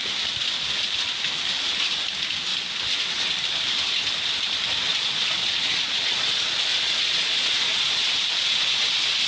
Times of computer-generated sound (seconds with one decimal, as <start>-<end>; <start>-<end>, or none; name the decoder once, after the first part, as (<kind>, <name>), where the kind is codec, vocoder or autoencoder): 4.9-9.3 (vocoder, Vocos)